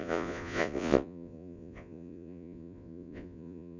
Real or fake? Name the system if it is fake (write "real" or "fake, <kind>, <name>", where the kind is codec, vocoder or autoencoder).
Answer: fake, vocoder, Vocos